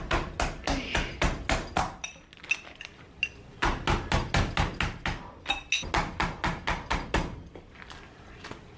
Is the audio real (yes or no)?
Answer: yes